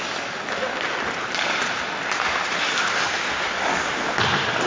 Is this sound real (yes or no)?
yes